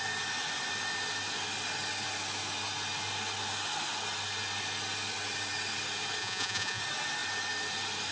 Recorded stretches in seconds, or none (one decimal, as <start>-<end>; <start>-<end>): 0.0-6.2; 6.8-8.1